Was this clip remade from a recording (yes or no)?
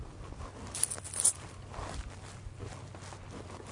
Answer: no